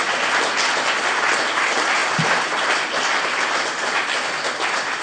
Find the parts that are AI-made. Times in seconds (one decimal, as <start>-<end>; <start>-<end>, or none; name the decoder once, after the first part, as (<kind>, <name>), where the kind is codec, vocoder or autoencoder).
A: none